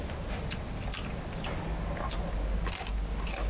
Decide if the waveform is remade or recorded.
recorded